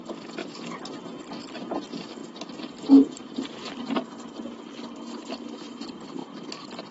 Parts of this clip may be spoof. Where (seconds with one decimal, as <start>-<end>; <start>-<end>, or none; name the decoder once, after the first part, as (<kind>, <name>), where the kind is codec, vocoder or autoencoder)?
2.2-4.4 (vocoder, BigVGAN v2); 6.2-6.9